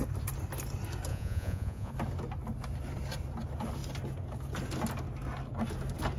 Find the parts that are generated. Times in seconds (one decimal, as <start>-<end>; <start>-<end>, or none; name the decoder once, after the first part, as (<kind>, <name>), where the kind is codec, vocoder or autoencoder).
1.1-1.9 (vocoder, Vocos)